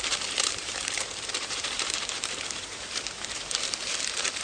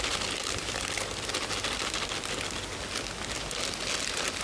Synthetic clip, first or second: first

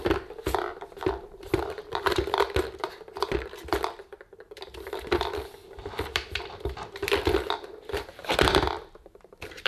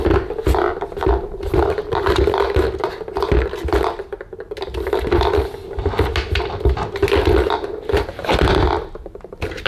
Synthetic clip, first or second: first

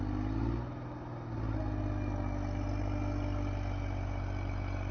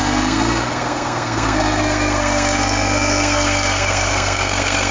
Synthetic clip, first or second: second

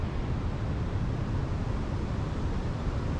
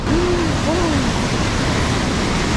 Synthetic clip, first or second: first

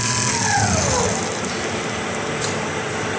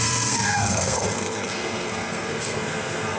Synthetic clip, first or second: second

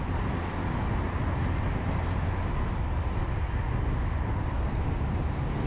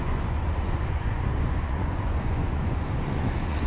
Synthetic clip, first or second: second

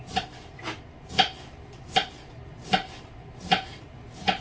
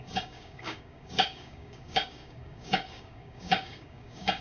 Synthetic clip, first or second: second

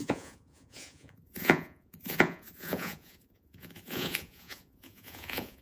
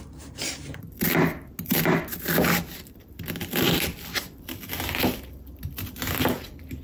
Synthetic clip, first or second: first